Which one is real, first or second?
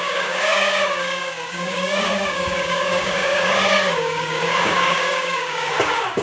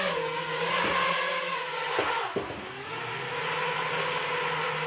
second